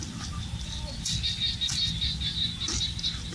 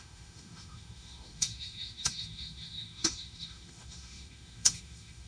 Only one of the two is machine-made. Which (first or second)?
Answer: second